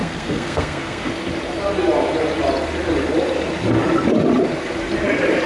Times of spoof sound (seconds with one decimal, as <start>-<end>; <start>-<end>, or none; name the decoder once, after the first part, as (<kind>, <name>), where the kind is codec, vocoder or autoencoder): 0.0-1.1 (codec, SNAC)

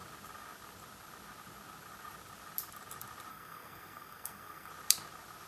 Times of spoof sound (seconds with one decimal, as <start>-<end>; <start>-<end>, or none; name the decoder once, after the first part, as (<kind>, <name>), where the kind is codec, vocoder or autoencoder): 3.3-4.7 (codec, SNAC)

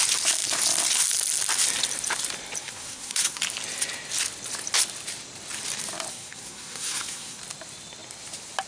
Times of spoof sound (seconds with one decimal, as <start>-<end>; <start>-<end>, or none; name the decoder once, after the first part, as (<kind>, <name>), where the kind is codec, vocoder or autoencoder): 2.6-3.4 (codec, SNAC); 6.1-7.4

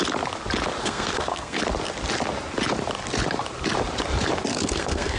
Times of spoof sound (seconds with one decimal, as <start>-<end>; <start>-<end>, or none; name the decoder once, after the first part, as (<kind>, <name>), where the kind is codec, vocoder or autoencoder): 0.8-1.6 (codec, SNAC); 4.5-5.2

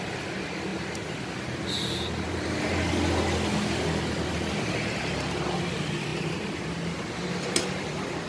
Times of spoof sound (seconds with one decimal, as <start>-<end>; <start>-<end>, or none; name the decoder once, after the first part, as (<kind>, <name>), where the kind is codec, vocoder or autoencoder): none

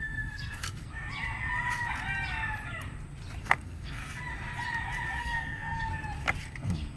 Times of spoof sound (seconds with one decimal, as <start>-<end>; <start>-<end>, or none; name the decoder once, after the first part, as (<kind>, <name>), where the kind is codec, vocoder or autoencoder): 0.0-0.9 (codec, SNAC); 3.4-4.0; 5.2-5.9; 6.4-7.0

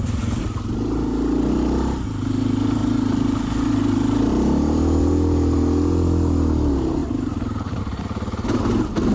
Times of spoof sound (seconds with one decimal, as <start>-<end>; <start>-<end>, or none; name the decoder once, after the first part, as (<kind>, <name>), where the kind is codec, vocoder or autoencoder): none